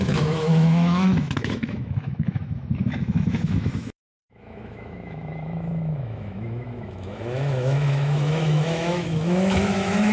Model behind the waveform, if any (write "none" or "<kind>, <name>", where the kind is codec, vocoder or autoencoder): autoencoder, DAC-VAE